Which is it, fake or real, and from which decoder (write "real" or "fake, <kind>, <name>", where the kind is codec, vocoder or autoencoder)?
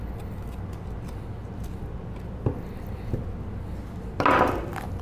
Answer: real